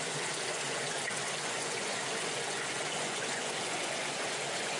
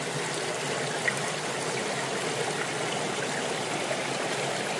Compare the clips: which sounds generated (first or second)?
first